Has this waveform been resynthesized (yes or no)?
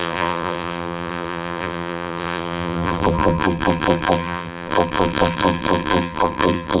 yes